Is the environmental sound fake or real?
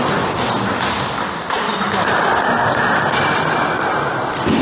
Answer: real